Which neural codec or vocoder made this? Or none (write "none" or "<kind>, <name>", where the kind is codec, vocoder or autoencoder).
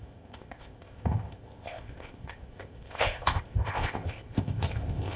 codec, ZipCodec